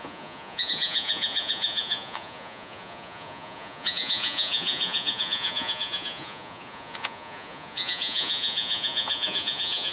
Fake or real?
fake